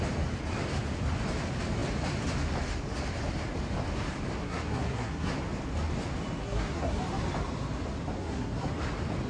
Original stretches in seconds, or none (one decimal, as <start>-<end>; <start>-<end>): 0.0-4.4; 5.3-6.4; 7.0-8.2; 8.7-9.3